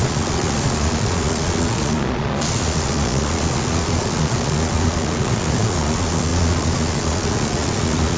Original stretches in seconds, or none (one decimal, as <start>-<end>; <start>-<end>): none